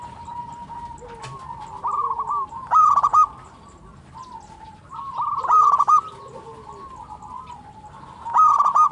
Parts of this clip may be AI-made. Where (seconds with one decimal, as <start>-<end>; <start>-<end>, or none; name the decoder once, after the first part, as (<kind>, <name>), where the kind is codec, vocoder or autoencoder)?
none